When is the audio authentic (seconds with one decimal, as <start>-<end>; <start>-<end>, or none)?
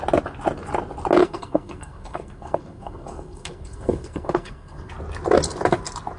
0.0-1.2; 4.9-6.2